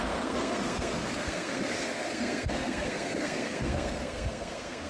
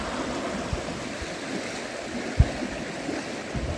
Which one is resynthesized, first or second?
first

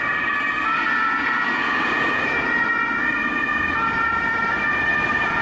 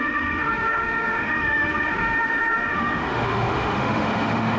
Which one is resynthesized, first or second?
second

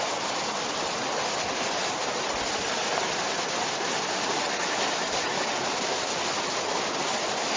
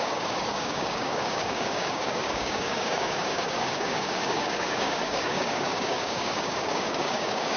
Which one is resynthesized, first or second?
second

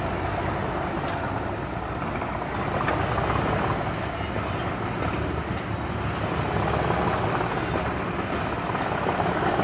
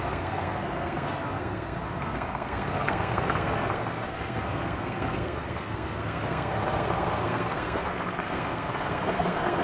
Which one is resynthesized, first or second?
second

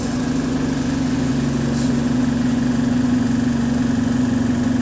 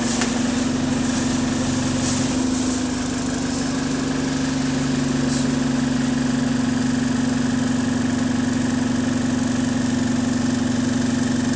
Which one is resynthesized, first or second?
first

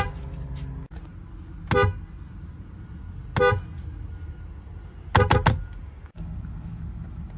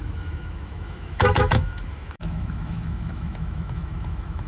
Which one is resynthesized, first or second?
second